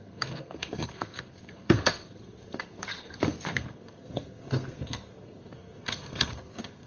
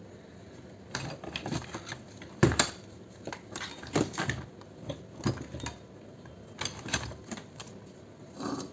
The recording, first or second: second